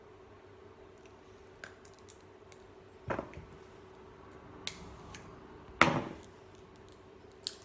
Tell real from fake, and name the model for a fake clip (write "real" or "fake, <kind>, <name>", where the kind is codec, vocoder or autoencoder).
real